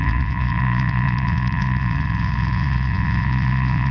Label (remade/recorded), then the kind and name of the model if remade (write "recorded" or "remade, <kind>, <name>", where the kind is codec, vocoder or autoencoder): remade, vocoder, Vocos